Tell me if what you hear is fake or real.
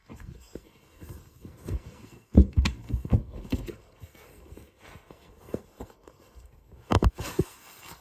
fake